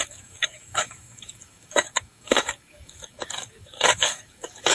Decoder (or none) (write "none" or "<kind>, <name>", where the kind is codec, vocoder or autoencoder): codec, DAC